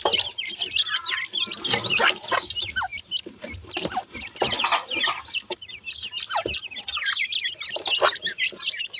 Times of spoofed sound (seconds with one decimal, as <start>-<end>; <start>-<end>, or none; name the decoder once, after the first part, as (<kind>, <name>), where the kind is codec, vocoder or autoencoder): none